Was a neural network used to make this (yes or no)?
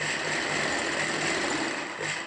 no